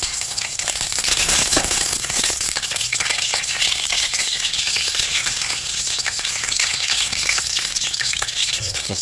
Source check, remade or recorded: remade